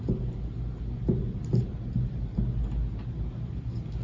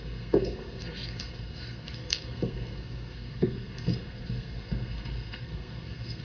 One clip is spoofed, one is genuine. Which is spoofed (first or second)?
second